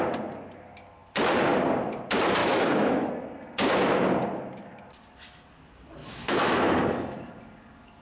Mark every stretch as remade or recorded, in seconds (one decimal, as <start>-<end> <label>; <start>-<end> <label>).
0.0-2.4 recorded; 2.4-3.1 remade; 3.1-6.0 recorded; 6.0-6.8 remade; 6.8-8.0 recorded